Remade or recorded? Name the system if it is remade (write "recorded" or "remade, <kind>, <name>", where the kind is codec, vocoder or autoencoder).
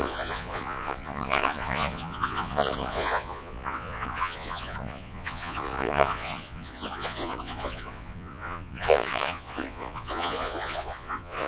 remade, vocoder, Vocos